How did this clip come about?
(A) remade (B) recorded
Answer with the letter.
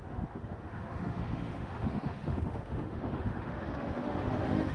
A